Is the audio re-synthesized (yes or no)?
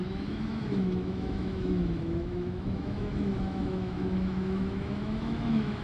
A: yes